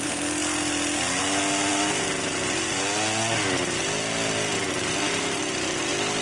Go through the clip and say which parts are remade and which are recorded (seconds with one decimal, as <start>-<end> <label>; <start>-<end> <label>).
0.0-6.2 recorded